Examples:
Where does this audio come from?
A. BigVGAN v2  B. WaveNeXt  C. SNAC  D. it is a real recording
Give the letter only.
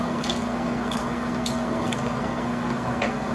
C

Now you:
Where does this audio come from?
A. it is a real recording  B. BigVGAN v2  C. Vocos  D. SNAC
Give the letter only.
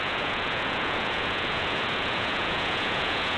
C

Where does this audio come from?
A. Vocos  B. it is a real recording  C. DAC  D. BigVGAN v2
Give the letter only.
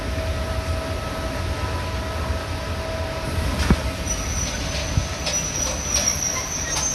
B